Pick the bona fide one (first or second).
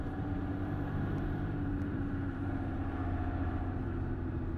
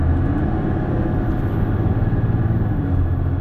second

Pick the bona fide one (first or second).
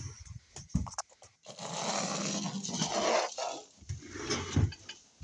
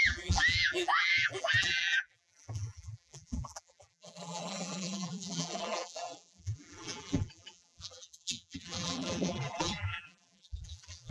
first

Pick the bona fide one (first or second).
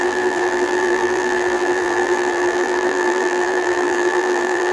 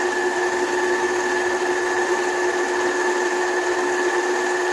second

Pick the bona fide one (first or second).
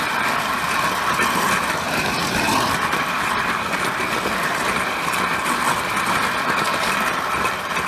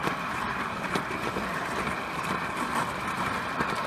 first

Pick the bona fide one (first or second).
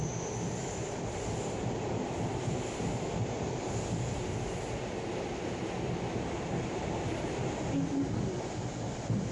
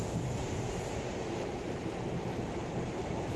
first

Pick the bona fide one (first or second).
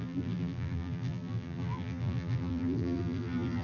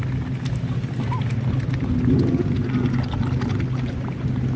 second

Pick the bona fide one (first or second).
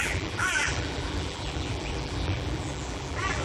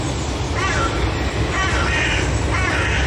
second